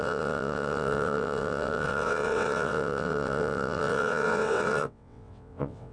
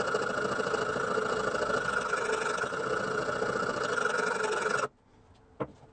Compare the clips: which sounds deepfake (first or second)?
first